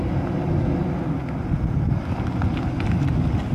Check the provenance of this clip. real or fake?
real